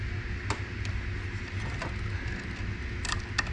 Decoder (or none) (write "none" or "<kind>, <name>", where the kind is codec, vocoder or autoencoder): none